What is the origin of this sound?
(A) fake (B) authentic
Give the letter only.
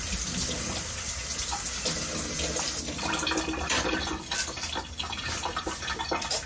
B